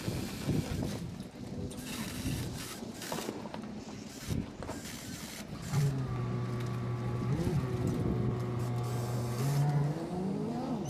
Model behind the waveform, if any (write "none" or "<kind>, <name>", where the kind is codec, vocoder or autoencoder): none